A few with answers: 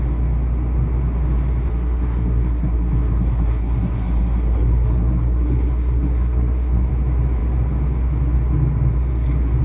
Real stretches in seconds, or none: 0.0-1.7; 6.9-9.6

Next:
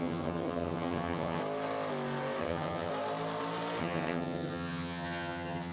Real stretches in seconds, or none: 1.4-2.4; 2.9-3.8